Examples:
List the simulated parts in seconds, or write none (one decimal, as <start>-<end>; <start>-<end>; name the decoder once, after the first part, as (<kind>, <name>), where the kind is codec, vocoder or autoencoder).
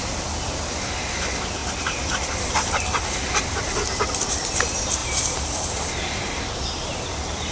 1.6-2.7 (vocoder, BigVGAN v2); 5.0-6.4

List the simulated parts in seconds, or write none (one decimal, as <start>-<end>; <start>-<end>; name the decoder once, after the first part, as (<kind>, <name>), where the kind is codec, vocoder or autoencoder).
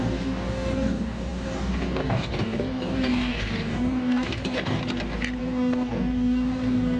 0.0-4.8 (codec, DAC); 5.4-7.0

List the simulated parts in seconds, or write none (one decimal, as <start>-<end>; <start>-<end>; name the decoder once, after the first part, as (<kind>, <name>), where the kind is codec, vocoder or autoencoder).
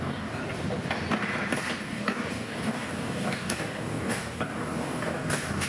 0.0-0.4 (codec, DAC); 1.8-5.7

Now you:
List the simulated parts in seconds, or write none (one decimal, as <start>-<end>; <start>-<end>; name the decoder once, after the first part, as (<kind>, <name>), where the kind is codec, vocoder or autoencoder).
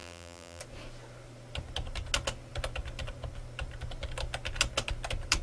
0.0-0.6 (vocoder, BigVGAN v2)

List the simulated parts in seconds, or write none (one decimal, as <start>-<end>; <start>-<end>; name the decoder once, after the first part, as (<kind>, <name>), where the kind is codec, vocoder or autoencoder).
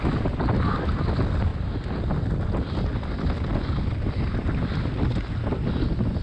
none